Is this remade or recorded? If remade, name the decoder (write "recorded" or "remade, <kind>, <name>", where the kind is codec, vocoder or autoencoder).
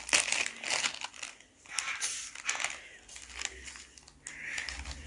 recorded